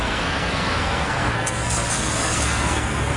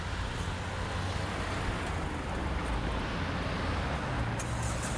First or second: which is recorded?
second